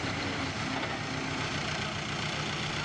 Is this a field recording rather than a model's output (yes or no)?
yes